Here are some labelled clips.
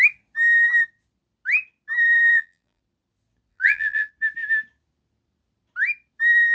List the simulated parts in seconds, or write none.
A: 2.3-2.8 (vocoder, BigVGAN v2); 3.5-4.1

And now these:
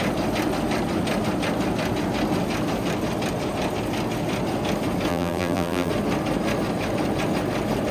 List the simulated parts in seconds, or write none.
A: 5.1-5.9 (vocoder, BigVGAN v2)

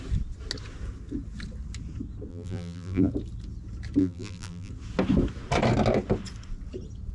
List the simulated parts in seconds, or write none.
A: 2.3-3.1 (vocoder, BigVGAN v2); 4.0-4.7

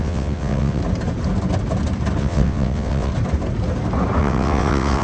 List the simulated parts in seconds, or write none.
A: 0.0-0.8 (vocoder, WaveNeXt); 2.2-3.1; 4.2-5.0